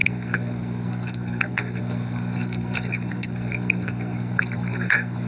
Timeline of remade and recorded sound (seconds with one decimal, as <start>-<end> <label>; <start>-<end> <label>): 0.0-5.3 remade

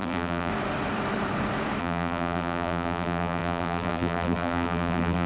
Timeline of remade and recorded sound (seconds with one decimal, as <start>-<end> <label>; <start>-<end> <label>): 0.0-0.5 remade; 0.5-1.8 recorded; 1.8-5.3 remade

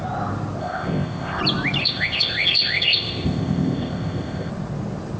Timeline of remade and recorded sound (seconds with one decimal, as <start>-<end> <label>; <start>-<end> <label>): 0.0-0.6 recorded; 0.6-1.4 remade; 1.4-1.8 recorded; 1.8-4.5 remade; 4.5-5.2 recorded

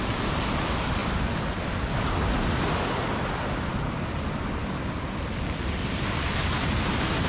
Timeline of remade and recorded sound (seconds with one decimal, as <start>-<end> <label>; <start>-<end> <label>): 0.0-7.3 recorded